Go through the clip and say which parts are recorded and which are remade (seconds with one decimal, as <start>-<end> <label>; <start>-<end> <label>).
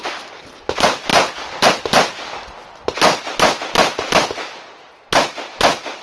0.0-6.0 recorded